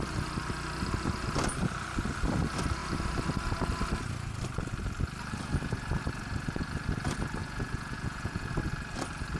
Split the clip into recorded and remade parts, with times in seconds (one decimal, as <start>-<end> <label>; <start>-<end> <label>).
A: 0.0-7.4 recorded; 7.4-8.5 remade; 8.5-9.4 recorded